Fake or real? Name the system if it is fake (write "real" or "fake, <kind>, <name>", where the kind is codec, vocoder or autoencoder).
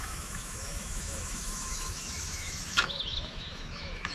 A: fake, autoencoder, DAC-VAE